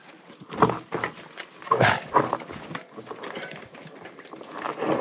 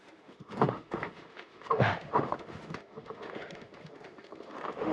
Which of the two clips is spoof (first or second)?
second